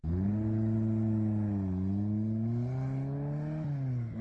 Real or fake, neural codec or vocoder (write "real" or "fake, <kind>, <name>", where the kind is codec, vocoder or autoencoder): real